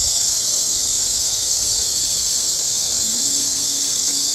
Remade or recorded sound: remade